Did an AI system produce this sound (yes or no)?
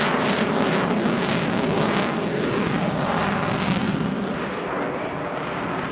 no